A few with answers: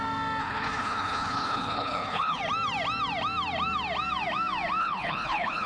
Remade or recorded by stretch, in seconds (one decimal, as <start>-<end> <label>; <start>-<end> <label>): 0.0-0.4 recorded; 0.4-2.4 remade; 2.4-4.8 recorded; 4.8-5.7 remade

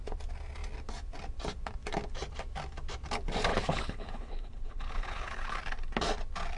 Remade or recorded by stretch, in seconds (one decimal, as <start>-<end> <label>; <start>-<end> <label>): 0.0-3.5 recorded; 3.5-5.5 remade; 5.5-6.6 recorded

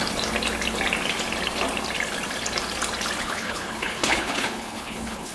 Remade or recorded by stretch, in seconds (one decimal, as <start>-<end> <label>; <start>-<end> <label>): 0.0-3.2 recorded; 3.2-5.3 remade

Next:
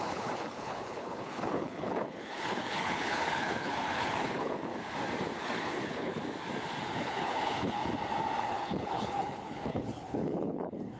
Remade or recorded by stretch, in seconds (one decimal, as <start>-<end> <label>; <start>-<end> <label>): 0.0-4.7 remade; 4.7-5.4 recorded; 5.4-6.2 remade; 6.2-6.8 recorded; 6.8-7.8 remade; 7.8-8.4 recorded; 8.4-11.0 remade